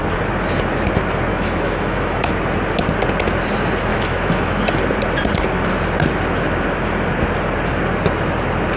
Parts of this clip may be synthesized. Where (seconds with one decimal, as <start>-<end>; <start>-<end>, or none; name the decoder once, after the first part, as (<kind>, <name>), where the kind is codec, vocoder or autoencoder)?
1.3-2.3 (autoencoder, DAC-VAE); 3.9-4.6